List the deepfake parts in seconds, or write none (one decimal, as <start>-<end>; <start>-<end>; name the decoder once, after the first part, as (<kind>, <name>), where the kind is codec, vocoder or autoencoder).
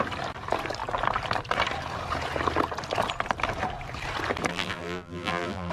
4.5-5.7 (vocoder, BigVGAN v2)